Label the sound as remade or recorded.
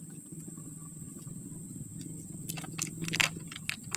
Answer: recorded